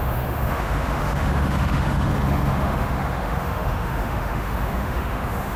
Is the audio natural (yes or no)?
no